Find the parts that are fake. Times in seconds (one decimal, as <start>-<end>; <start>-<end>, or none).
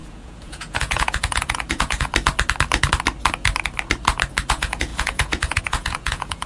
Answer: 0.0-2.1; 4.5-6.5